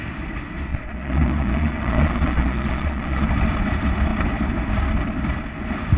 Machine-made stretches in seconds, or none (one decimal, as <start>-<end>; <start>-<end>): 0.7-3.3